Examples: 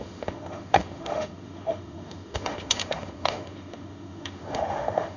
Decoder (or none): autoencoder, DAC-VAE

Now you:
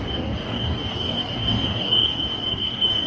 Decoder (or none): codec, DAC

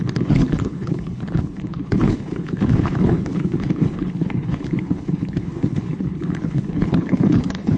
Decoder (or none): codec, HILCodec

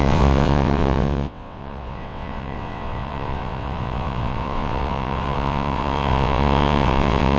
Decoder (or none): vocoder, WaveNeXt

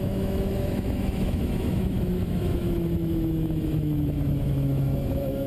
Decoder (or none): autoencoder, DAC-VAE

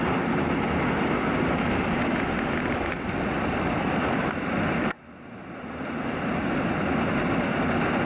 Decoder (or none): none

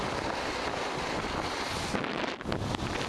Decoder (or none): none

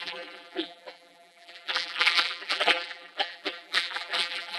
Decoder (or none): vocoder, BigVGAN v2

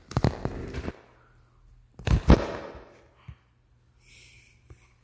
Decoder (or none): vocoder, BigVGAN v2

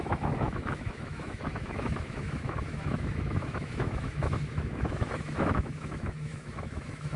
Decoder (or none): autoencoder, DAC-VAE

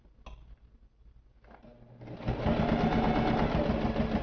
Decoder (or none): none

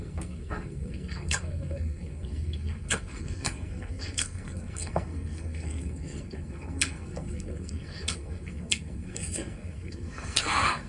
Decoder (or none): codec, SNAC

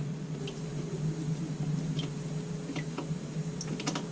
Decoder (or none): none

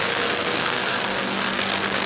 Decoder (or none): codec, SNAC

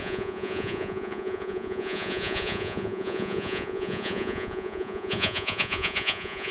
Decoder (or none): vocoder, Vocos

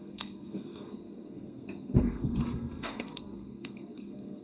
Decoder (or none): codec, SNAC